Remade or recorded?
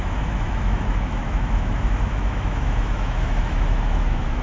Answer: remade